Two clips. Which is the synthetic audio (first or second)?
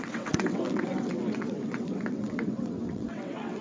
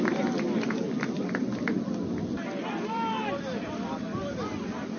first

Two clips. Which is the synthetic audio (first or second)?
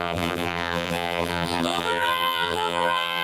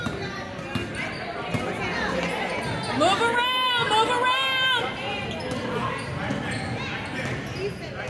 first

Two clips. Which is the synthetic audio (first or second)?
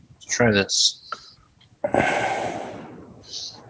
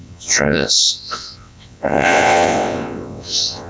second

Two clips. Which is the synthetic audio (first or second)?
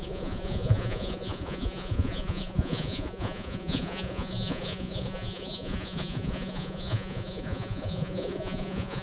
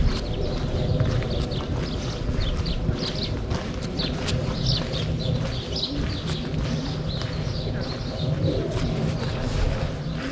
first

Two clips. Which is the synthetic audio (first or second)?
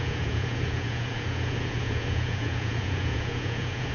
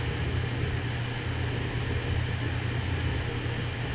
first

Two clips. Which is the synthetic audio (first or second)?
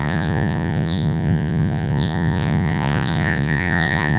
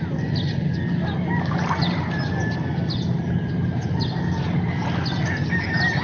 first